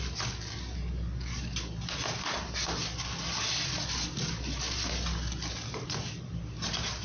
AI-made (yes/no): no